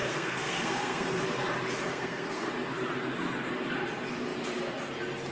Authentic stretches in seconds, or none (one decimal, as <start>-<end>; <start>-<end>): 1.2-1.9; 2.5-5.3

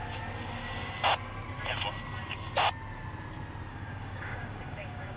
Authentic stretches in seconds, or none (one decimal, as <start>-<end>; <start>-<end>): 0.0-3.7

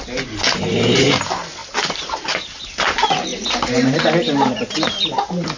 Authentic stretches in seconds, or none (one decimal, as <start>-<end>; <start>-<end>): 0.0-1.6; 2.1-3.3; 4.0-5.6

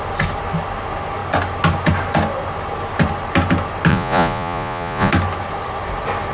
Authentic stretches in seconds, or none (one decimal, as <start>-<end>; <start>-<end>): 0.0-3.9; 5.1-6.3

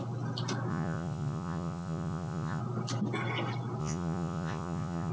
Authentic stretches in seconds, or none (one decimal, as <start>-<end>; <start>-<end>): 0.0-0.7; 2.6-3.8